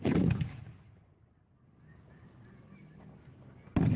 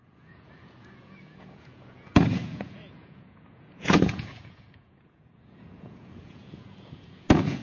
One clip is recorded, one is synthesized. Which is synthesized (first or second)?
second